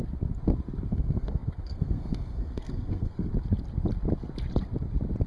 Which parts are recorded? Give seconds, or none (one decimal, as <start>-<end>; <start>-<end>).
0.0-0.9; 3.3-5.3